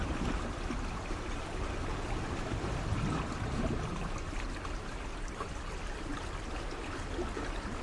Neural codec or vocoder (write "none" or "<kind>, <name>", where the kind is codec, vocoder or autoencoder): none